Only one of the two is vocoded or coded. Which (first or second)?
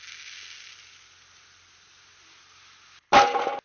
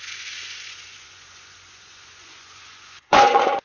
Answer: second